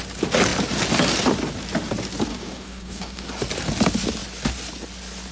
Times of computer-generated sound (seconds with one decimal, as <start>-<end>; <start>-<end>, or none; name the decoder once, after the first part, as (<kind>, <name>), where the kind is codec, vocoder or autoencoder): 2.3-3.3 (codec, DAC)